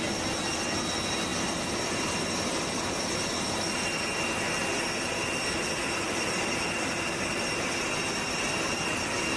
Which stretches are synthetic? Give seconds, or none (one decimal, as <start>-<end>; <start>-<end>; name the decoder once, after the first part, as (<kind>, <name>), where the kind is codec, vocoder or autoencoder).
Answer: 5.8-6.5 (vocoder, BigVGAN v2)